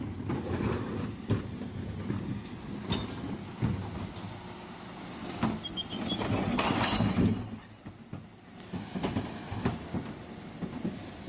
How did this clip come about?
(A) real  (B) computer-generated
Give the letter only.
A